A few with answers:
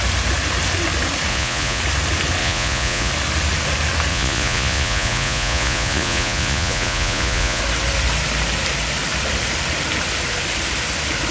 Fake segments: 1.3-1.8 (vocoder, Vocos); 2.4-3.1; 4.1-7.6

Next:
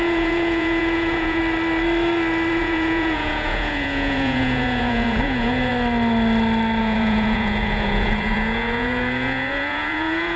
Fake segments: 0.0-1.4 (vocoder, Vocos); 2.5-5.7; 6.8-10.4

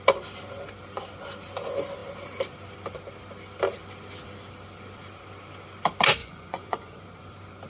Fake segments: 6.2-7.0 (vocoder, Vocos)

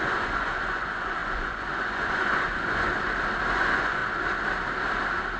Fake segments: 0.0-2.9 (vocoder, Vocos); 3.5-4.0

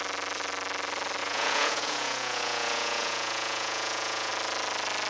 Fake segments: 1.2-4.3 (vocoder, Vocos)